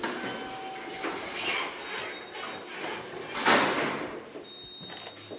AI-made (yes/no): no